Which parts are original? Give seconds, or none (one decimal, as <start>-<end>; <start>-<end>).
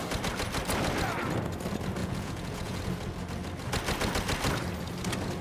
0.0-2.0; 2.8-5.4